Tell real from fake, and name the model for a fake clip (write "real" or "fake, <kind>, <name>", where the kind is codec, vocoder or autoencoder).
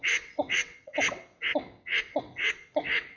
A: fake, vocoder, WaveNeXt